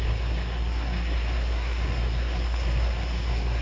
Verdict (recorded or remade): remade